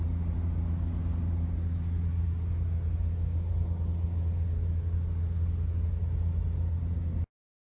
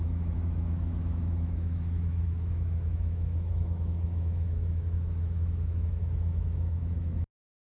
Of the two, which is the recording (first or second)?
first